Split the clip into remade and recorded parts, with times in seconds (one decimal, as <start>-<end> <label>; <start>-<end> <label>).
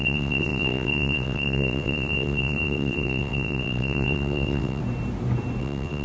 0.0-4.8 remade; 4.8-5.6 recorded; 5.6-6.0 remade